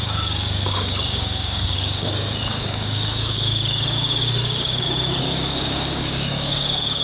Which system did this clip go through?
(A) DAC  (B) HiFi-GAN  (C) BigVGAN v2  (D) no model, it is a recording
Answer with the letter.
A